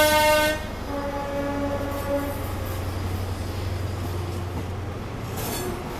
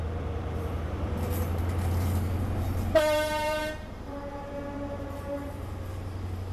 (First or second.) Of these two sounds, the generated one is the second